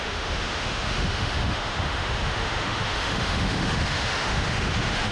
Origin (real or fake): fake